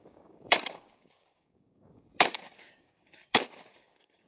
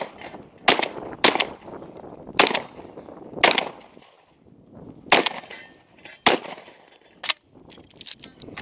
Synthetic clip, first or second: first